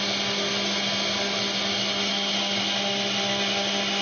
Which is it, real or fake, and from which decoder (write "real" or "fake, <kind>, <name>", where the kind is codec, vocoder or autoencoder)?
real